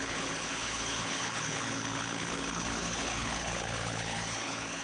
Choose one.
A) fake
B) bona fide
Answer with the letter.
A